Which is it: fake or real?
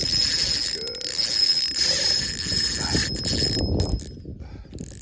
real